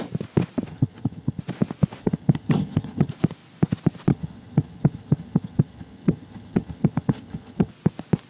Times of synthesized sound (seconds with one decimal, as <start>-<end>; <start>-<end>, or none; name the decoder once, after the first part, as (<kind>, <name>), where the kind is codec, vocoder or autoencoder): 0.7-1.4 (vocoder, HiFi-GAN); 2.0-3.1; 4.1-7.7